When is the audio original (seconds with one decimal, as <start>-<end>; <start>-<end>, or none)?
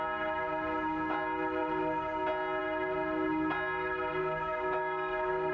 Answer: 0.0-4.2